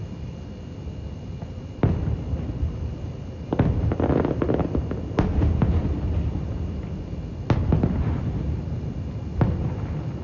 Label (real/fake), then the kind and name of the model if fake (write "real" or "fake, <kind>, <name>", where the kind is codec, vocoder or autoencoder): real